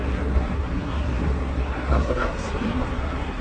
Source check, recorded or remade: remade